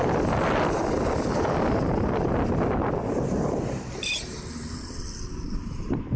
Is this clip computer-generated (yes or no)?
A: no